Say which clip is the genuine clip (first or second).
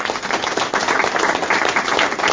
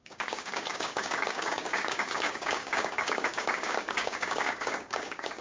first